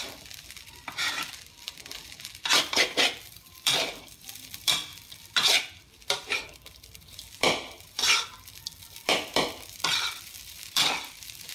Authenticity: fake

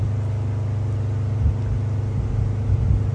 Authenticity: real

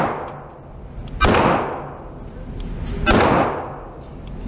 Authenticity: real